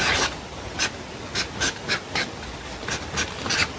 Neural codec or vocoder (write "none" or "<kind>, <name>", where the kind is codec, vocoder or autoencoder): none